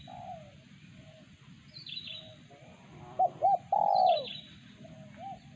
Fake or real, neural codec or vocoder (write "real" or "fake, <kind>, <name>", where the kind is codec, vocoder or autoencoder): real